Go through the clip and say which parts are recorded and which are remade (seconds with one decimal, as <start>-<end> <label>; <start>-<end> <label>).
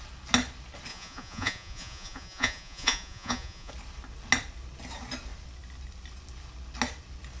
0.0-0.9 recorded; 0.9-3.7 remade; 3.7-7.4 recorded